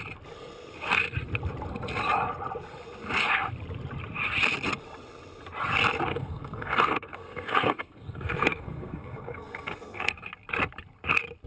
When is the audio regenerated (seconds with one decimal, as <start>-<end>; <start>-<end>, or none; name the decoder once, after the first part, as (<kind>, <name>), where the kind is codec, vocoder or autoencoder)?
6.1-10.1 (codec, SNAC)